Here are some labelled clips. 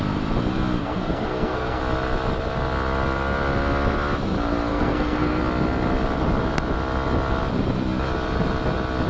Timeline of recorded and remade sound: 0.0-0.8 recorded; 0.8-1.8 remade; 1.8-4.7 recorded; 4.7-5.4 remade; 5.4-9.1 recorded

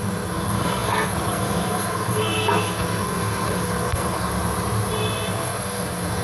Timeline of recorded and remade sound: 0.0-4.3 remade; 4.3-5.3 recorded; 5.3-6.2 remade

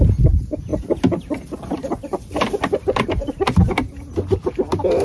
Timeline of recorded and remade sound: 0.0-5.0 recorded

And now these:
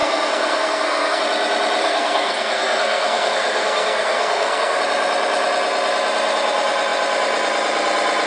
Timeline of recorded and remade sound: 0.0-1.2 remade; 1.2-1.8 recorded; 1.8-4.8 remade; 4.8-8.3 recorded